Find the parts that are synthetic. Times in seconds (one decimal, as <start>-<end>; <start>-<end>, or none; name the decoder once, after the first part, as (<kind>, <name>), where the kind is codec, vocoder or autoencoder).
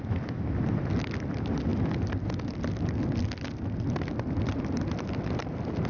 none